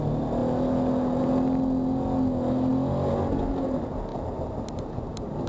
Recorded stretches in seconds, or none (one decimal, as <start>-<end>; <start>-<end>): 0.0-5.5